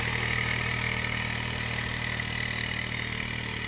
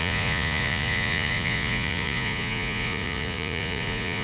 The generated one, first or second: second